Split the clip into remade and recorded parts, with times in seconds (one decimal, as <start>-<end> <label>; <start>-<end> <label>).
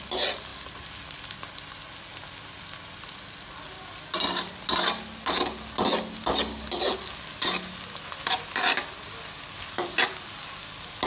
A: 0.0-11.1 recorded